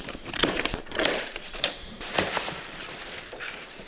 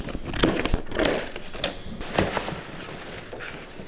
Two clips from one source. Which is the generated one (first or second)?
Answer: first